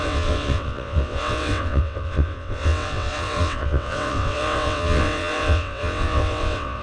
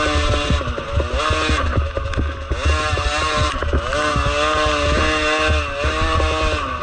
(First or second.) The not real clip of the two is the first